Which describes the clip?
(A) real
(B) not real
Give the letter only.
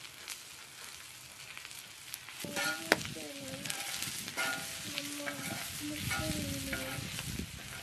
A